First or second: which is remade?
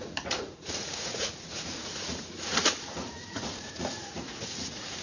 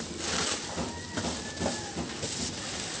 first